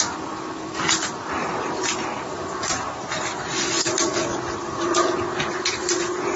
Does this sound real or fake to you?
fake